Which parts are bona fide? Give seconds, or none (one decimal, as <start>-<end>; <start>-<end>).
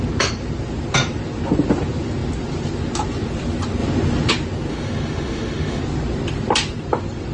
0.0-4.7; 5.8-7.3